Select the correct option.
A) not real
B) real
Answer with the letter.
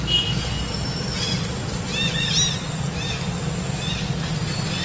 B